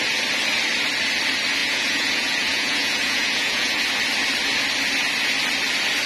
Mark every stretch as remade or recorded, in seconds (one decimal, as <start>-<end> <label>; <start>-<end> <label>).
0.0-1.6 recorded; 1.6-3.8 remade; 3.8-6.1 recorded